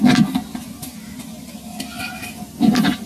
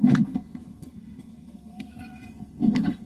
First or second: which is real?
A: first